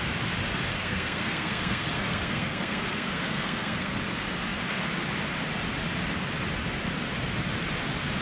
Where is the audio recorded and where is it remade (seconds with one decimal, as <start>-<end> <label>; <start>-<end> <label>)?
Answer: 0.0-0.7 recorded; 0.7-4.0 remade; 4.0-8.2 recorded